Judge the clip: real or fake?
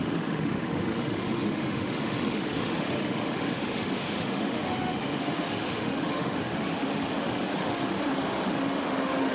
fake